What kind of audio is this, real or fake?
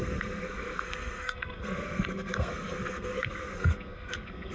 fake